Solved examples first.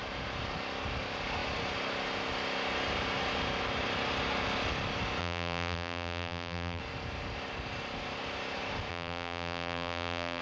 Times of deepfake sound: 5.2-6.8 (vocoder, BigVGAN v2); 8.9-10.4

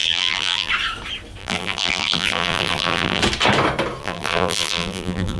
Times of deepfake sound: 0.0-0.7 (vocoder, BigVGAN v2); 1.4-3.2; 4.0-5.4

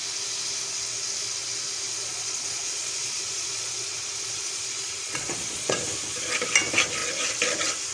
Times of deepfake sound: 2.0-5.8 (vocoder, Vocos)